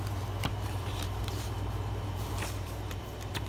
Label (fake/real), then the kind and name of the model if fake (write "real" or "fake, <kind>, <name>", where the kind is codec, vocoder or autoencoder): fake, vocoder, BigVGAN v2